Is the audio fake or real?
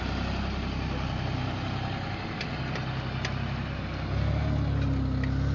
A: real